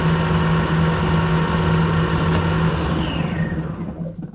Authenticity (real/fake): real